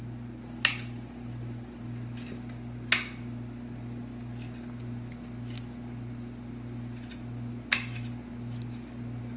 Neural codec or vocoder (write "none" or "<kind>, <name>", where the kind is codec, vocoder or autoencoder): none